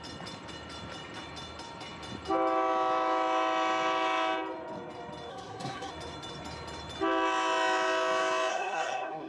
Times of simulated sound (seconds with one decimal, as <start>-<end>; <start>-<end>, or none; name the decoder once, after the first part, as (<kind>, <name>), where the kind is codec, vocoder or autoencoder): 5.3-5.9 (codec, SNAC); 8.5-9.3